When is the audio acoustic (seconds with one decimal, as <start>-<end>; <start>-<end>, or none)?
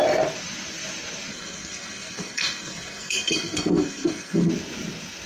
0.0-1.3; 4.5-5.3